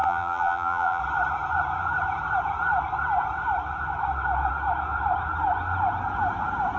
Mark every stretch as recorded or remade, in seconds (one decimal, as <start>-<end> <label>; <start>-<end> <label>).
0.0-1.0 remade; 1.0-6.8 recorded